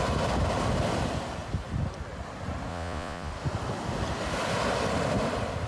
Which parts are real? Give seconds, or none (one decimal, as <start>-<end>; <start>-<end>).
0.0-2.7; 3.3-5.7

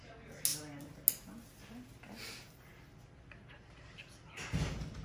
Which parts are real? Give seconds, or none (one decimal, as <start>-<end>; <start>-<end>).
0.0-5.0

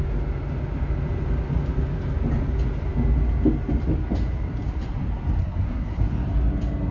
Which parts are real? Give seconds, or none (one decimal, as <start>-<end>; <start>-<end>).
0.0-5.4; 6.0-6.9

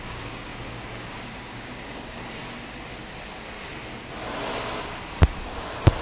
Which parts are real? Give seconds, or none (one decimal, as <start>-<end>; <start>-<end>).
2.2-6.0

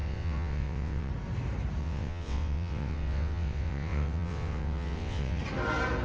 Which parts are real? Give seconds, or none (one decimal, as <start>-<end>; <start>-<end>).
1.1-1.8; 5.4-6.0